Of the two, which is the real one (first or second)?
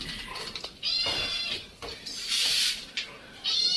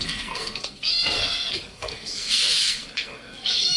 first